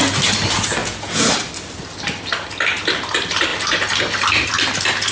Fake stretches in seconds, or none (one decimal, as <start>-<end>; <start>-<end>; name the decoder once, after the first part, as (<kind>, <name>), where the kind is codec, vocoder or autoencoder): 0.8-1.3 (vocoder, Vocos)